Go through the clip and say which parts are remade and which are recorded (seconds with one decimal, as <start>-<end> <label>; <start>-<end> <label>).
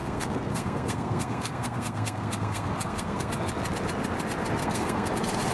0.0-3.3 remade; 3.3-4.6 recorded; 4.6-5.1 remade; 5.1-5.5 recorded